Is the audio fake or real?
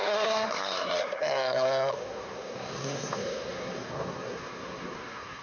fake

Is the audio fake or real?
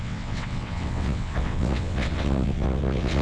fake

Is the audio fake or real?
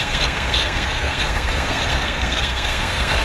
fake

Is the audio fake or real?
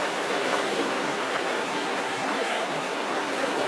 fake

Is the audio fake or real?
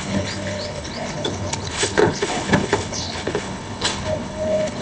fake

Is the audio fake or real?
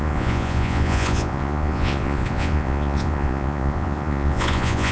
fake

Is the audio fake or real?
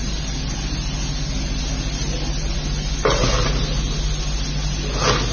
real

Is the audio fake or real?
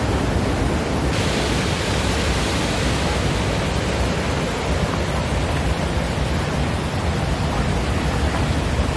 real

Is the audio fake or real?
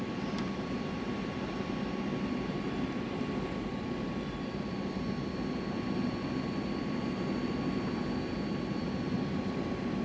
real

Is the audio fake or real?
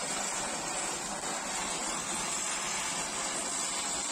real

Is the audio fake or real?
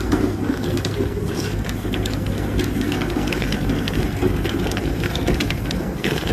fake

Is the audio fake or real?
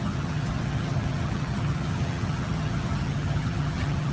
fake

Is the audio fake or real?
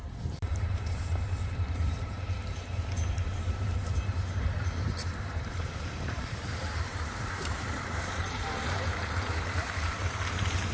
fake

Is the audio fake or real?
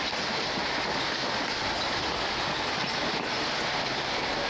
real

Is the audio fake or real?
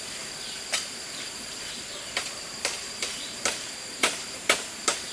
fake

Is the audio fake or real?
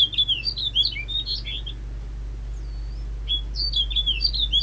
real